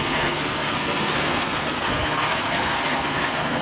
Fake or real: fake